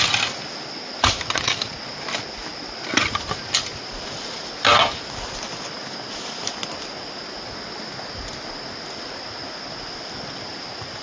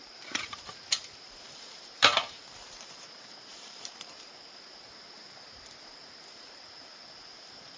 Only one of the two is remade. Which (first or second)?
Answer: second